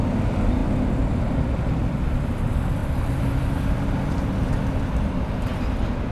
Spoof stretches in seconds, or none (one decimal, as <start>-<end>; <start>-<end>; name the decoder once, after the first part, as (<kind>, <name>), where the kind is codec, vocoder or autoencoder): 0.0-0.6 (vocoder, BigVGAN v2); 1.1-6.1